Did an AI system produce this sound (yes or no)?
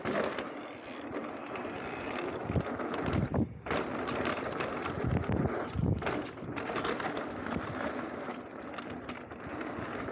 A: no